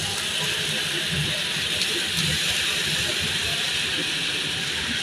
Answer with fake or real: real